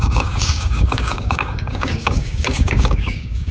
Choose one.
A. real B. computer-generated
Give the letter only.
B